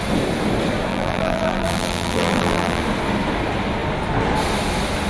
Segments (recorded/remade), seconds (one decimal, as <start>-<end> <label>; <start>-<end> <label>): 0.0-0.9 recorded; 0.9-2.8 remade; 2.8-5.1 recorded

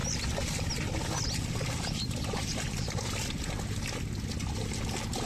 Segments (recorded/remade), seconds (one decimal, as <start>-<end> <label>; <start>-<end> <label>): 0.0-5.3 recorded

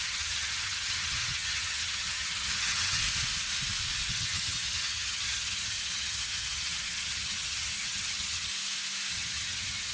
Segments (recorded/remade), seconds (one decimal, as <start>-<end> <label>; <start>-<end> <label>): 0.0-3.0 remade; 3.0-4.1 recorded; 4.1-8.5 remade; 8.5-9.1 recorded; 9.1-9.9 remade

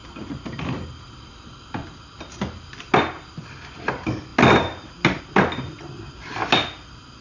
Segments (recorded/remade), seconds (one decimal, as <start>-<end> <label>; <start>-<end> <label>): 0.0-7.2 recorded

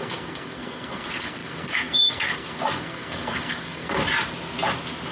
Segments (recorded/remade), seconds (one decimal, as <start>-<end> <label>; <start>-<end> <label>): 0.0-4.0 remade; 4.0-5.1 recorded

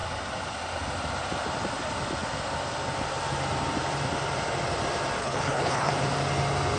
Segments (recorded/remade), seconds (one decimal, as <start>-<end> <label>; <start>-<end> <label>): 0.0-5.2 recorded; 5.2-5.9 remade; 5.9-6.8 recorded